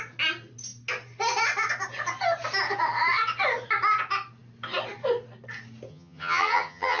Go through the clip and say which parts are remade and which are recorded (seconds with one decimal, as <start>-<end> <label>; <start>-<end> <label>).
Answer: 0.0-5.9 recorded; 5.9-7.0 remade